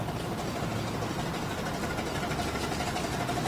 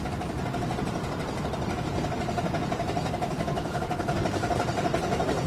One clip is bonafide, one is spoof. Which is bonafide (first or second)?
first